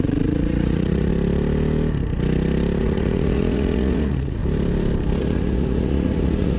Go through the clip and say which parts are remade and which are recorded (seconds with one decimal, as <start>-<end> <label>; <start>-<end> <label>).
0.0-1.1 remade; 1.1-2.8 recorded; 2.8-4.4 remade; 4.4-5.2 recorded; 5.2-6.6 remade